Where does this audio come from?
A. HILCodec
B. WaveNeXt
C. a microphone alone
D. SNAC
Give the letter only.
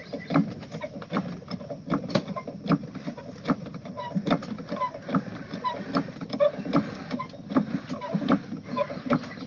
C